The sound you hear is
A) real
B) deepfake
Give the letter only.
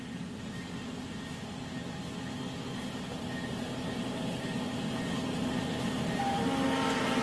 A